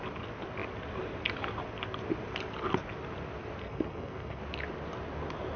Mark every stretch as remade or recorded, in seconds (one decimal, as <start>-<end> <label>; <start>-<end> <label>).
0.0-3.6 recorded; 3.6-4.4 remade; 4.4-5.6 recorded